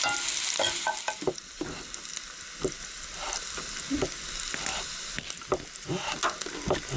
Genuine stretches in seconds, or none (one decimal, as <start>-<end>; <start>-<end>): 0.0-4.7; 5.9-7.0